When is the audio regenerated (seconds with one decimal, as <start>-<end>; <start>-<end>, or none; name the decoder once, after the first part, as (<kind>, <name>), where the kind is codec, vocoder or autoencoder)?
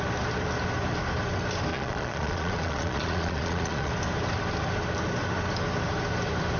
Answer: 1.7-3.9 (vocoder, Vocos)